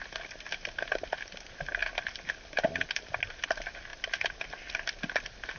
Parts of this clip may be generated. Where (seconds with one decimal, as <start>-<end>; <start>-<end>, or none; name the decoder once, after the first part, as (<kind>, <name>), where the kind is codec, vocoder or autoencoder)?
none

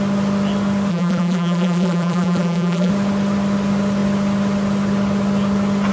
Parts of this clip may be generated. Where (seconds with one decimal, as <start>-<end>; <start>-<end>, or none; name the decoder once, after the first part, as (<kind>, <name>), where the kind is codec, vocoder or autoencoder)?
0.9-2.9 (vocoder, BigVGAN v2)

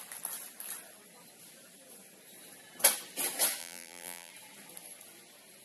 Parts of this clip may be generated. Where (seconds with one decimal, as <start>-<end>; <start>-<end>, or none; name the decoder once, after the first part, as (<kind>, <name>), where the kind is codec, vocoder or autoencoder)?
3.6-4.3 (vocoder, BigVGAN v2)

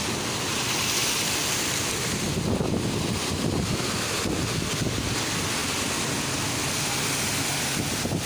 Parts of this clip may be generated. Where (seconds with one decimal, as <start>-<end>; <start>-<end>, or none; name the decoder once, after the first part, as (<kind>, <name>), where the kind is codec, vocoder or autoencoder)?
1.0-4.3 (vocoder, BigVGAN v2)

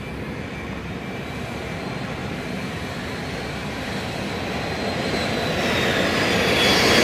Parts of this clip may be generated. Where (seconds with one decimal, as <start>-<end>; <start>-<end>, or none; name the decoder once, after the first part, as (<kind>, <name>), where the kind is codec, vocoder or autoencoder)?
0.8-1.8 (vocoder, BigVGAN v2); 2.2-4.2

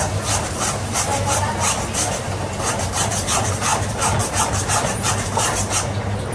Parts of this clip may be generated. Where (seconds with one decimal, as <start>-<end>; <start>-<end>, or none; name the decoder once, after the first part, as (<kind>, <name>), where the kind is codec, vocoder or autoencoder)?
0.0-1.1 (vocoder, BigVGAN v2); 2.7-6.3

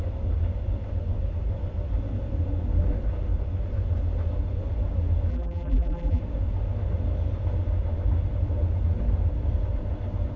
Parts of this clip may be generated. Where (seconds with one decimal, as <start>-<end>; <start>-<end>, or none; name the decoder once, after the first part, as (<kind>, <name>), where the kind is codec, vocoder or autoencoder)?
5.3-6.2 (vocoder, BigVGAN v2)

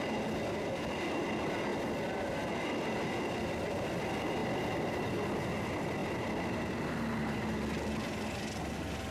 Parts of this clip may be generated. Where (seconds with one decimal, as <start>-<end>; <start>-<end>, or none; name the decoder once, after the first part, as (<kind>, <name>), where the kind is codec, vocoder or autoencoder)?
4.4-5.0 (vocoder, BigVGAN v2)